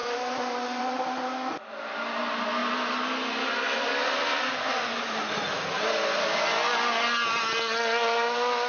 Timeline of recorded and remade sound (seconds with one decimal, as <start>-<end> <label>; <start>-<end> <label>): 0.0-8.7 recorded